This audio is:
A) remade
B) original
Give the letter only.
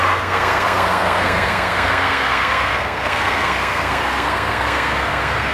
A